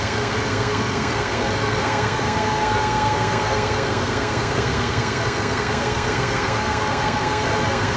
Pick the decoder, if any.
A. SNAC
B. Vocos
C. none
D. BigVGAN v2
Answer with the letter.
A